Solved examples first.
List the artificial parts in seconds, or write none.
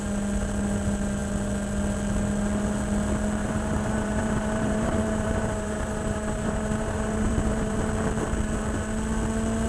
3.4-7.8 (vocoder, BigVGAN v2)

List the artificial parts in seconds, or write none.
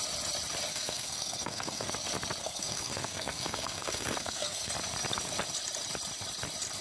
0.7-1.9 (codec, SNAC); 2.4-4.7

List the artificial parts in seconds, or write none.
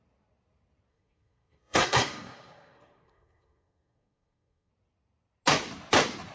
0.9-4.7 (codec, SNAC)